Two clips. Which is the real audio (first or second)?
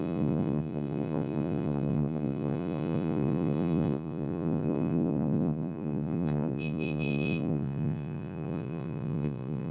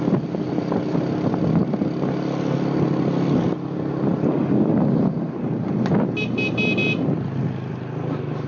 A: second